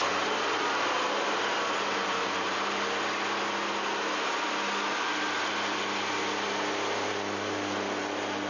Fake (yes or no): no